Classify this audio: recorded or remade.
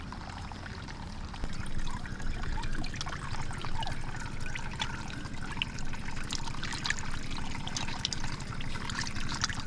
recorded